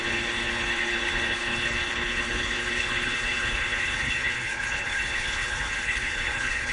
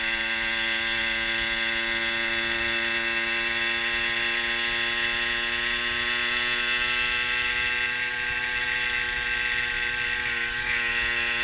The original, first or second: second